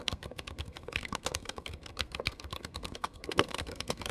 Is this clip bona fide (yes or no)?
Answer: no